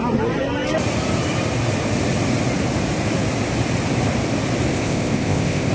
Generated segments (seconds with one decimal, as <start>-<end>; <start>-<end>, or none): 4.7-5.7